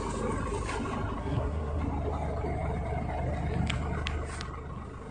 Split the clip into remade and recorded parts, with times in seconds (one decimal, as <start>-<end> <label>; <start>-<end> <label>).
0.0-1.2 recorded; 1.2-1.8 remade; 1.8-5.1 recorded